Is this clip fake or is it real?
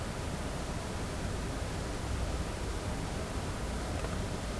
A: real